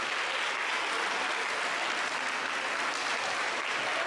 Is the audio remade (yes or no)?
no